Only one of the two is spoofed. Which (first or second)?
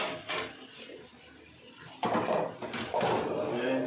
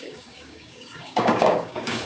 second